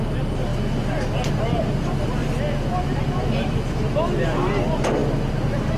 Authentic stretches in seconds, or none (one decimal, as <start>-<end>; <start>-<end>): 0.0-5.8